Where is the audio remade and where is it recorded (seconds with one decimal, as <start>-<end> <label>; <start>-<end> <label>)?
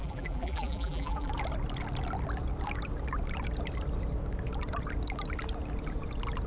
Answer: 0.0-1.3 remade; 1.3-6.5 recorded